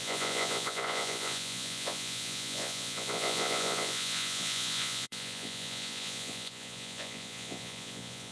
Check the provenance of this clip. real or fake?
fake